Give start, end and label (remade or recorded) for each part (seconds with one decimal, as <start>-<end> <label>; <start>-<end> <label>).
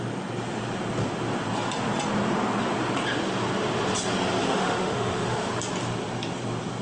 0.0-4.4 recorded; 4.4-5.5 remade; 5.5-6.8 recorded